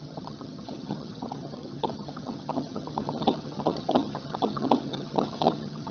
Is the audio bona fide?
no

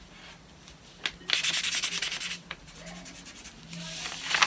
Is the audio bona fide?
yes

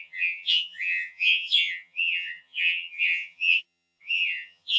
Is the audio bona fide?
no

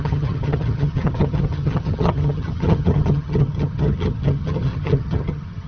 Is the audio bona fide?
no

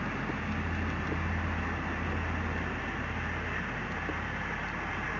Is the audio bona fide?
yes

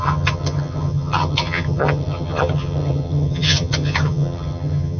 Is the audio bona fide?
no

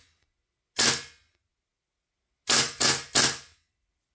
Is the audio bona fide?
yes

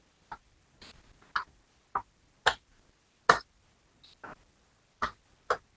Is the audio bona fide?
yes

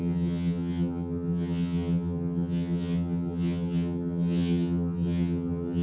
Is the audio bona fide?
no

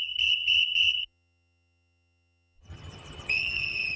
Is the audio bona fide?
no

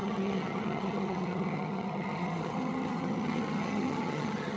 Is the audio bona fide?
no